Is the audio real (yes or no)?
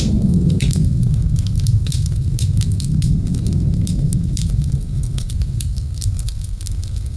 no